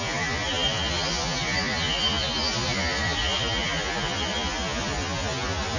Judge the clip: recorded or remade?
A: recorded